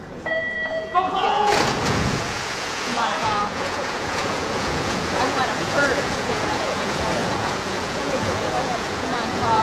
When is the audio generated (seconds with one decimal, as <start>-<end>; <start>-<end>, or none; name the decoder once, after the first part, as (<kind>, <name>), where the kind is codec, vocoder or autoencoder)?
0.0-9.6 (vocoder, Vocos)